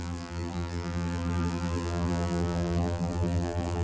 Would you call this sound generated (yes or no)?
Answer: yes